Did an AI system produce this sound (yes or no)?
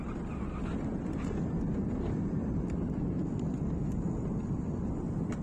no